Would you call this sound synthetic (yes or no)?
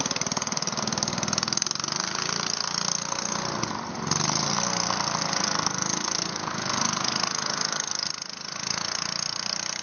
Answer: no